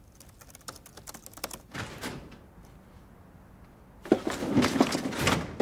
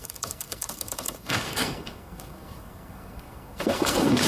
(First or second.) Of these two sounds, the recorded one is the first